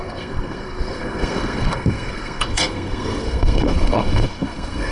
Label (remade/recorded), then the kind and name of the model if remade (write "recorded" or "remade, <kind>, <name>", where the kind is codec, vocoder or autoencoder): remade, codec, SNAC